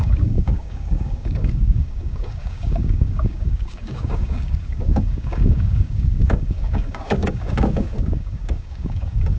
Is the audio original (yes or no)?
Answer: no